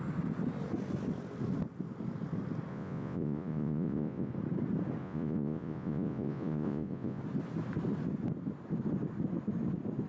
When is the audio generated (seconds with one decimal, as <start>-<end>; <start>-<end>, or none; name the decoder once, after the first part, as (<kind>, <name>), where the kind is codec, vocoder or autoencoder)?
2.7-4.3 (vocoder, Vocos); 5.0-7.2